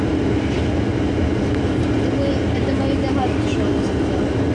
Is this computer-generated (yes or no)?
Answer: no